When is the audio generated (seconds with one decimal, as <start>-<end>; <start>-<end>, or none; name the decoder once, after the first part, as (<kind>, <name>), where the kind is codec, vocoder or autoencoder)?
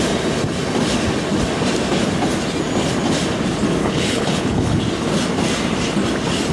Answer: 3.8-4.8 (codec, HILCodec)